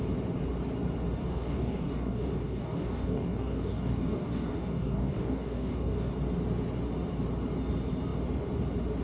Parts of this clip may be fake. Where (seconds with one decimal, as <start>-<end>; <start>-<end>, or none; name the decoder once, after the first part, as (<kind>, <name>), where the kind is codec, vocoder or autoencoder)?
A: 1.2-6.1 (codec, DAC)